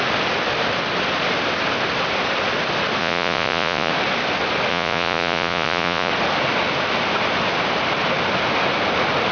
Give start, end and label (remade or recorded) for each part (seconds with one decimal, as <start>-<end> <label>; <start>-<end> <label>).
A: 0.0-3.0 recorded; 3.0-3.9 remade; 3.9-4.7 recorded; 4.7-6.1 remade; 6.1-9.3 recorded